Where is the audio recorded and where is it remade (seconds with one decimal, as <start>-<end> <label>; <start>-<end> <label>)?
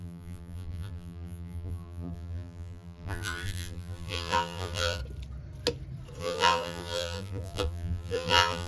0.0-5.0 remade; 5.0-6.2 recorded; 6.2-8.7 remade